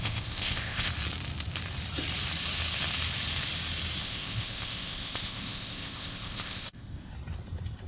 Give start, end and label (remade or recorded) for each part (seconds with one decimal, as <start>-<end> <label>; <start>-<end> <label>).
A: 0.0-0.9 remade; 0.9-4.0 recorded; 4.0-7.1 remade; 7.1-7.9 recorded